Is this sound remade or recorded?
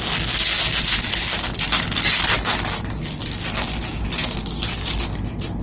recorded